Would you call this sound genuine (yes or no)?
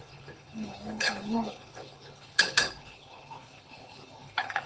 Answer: no